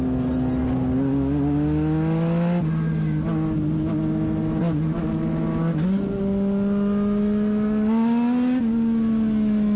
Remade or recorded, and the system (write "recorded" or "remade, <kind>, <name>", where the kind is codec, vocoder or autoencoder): recorded